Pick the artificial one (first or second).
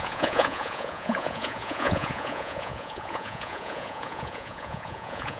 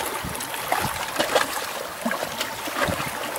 first